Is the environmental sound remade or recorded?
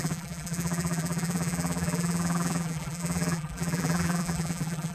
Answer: remade